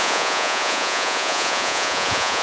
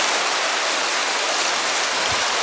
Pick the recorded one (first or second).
second